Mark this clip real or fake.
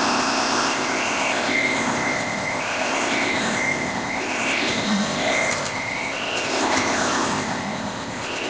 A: fake